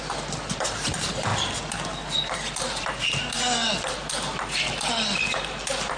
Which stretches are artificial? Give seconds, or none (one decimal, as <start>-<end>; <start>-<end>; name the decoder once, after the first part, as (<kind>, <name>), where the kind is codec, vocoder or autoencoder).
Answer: none